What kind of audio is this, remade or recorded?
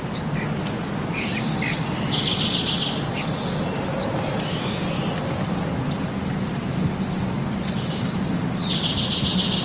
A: recorded